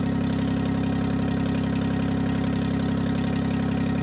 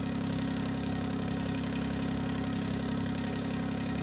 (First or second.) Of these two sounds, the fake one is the second